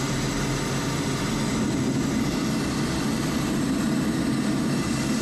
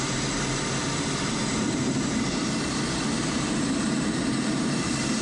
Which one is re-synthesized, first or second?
second